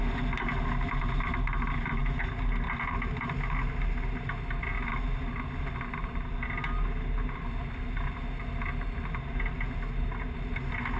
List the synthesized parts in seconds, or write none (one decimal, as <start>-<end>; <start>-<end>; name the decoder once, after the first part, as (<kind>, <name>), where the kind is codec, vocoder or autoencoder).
none